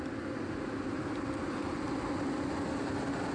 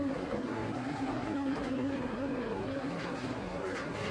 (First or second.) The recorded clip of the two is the first